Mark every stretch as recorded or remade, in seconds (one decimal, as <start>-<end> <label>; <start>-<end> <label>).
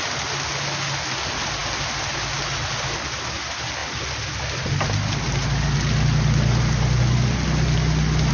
0.0-8.3 recorded